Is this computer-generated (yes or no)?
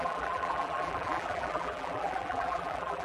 yes